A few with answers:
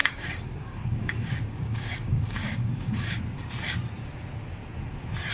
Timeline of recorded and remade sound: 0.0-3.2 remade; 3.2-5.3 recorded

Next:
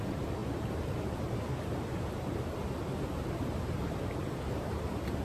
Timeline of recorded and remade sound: 0.0-5.2 remade

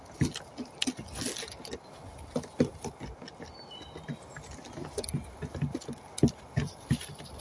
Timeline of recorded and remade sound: 0.0-7.4 recorded

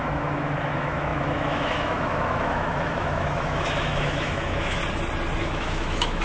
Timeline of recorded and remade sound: 0.0-4.8 remade; 4.8-5.4 recorded; 5.4-6.2 remade